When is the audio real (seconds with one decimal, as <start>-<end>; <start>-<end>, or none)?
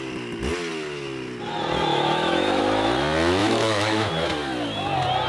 0.0-1.9; 2.6-3.4; 4.1-5.3